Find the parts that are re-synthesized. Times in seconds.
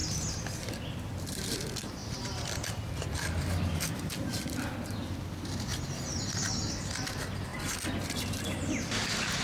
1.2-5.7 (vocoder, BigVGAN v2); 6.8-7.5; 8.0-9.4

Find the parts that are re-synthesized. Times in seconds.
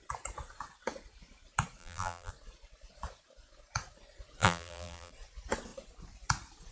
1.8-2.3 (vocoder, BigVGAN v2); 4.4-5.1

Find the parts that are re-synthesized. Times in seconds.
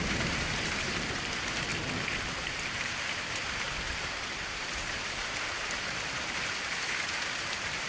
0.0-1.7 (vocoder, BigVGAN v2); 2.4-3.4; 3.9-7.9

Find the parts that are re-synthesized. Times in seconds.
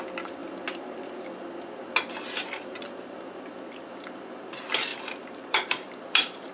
4.9-6.5 (vocoder, BigVGAN v2)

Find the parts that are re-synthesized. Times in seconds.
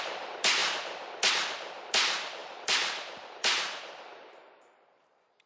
2.4-5.5 (vocoder, BigVGAN v2)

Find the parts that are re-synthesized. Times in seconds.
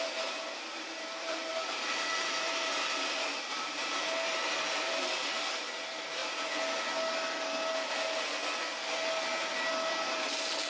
0.0-6.2 (vocoder, BigVGAN v2); 9.9-10.7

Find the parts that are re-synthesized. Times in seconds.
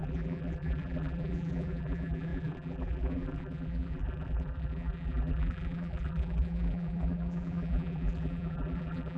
0.0-9.2 (vocoder, BigVGAN v2)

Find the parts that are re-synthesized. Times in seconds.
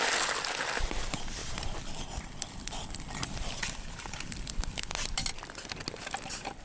0.0-4.9 (vocoder, BigVGAN v2); 6.0-6.6